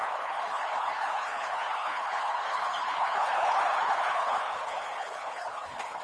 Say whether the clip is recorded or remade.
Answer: remade